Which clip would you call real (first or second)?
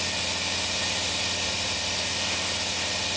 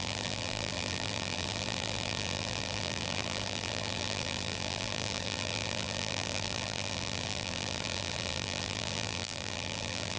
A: first